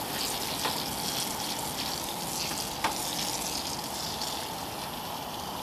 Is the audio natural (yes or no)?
yes